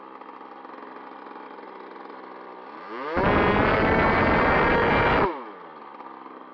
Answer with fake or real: real